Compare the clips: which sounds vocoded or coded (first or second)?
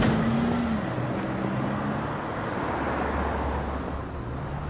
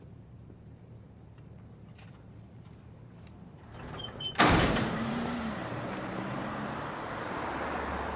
second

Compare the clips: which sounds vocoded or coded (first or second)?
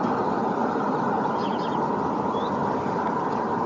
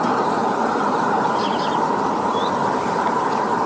second